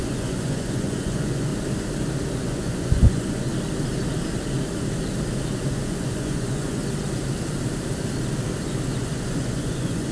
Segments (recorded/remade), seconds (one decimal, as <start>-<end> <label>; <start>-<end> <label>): 0.0-1.5 remade; 1.5-2.4 recorded; 2.4-3.5 remade; 3.5-5.7 recorded; 5.7-6.8 remade; 6.8-9.0 recorded; 9.0-10.1 remade

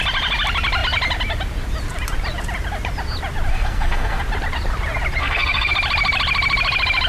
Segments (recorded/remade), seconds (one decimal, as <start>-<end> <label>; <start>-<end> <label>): 0.0-3.5 recorded; 3.5-4.2 remade; 4.2-5.2 recorded; 5.2-5.7 remade; 5.7-7.1 recorded

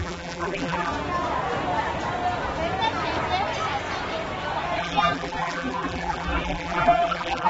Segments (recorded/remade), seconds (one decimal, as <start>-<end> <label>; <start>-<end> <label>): 0.0-0.9 remade; 0.9-4.8 recorded; 4.8-7.5 remade

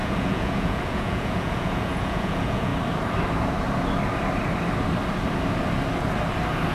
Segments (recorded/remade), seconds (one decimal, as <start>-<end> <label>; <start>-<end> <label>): 0.0-2.7 remade; 2.7-6.7 recorded

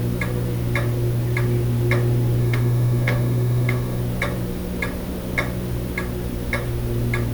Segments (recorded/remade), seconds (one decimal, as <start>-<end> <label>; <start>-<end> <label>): 0.0-2.4 recorded; 2.4-4.0 remade; 4.0-7.3 recorded

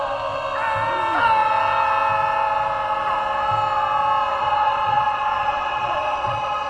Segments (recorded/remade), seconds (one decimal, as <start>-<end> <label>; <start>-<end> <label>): 0.0-4.3 recorded; 4.3-6.7 remade

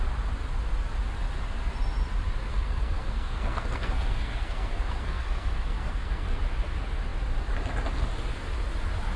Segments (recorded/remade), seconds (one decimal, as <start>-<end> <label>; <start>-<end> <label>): 0.0-2.5 recorded; 2.5-6.4 remade; 6.4-9.2 recorded

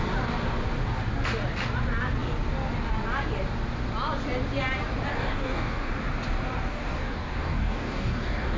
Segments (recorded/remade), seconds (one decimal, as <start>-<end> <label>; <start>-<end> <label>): 0.0-5.1 recorded; 5.1-5.9 remade; 5.9-6.7 recorded; 6.7-8.6 remade